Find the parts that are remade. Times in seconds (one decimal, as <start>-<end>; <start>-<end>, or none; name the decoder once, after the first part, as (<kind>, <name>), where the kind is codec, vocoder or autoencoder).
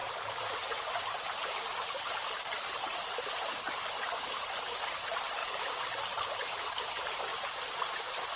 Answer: none